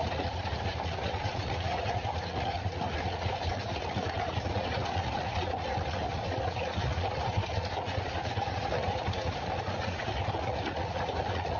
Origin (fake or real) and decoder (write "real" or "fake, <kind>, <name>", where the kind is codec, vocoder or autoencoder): fake, vocoder, Vocos